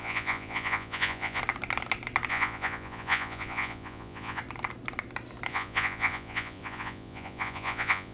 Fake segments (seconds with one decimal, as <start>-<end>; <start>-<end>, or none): 0.0-1.4; 2.3-4.4; 5.5-8.1